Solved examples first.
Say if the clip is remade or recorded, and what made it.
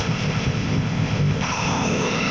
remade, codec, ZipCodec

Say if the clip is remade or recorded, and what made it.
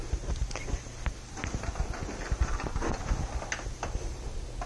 recorded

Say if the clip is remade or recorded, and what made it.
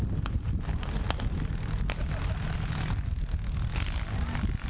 recorded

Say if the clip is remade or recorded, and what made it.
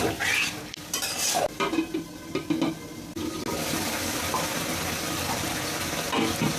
recorded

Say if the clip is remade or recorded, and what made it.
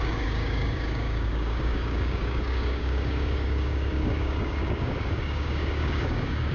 remade, codec, DAC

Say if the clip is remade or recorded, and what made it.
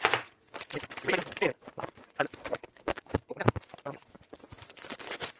remade, vocoder, Vocos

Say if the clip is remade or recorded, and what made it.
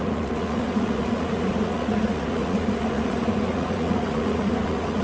remade, vocoder, Vocos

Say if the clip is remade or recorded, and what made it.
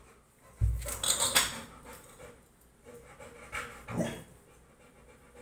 recorded